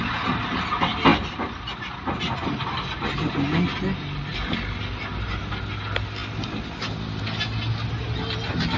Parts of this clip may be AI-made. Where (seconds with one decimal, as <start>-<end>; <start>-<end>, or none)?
none